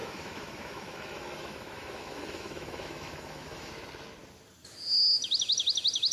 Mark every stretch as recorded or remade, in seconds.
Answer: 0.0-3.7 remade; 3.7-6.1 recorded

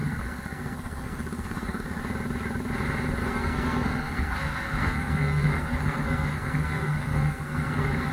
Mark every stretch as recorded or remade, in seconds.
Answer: 0.0-2.0 remade; 2.0-3.2 recorded; 3.2-8.1 remade

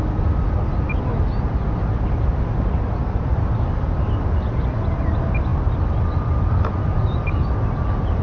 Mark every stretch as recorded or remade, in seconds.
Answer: 0.0-8.2 recorded

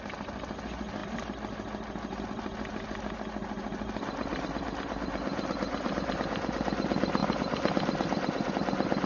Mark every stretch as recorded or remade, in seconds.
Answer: 0.0-4.2 recorded; 4.2-6.1 remade; 6.1-7.2 recorded; 7.2-8.5 remade; 8.5-9.1 recorded

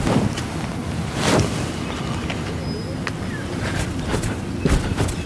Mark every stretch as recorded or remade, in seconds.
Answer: 0.0-5.3 recorded